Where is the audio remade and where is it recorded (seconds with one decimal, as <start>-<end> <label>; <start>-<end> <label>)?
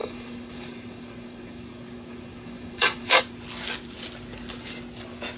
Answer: 0.0-3.2 remade; 3.2-5.4 recorded